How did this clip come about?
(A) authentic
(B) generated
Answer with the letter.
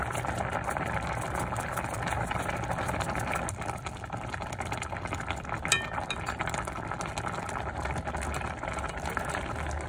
A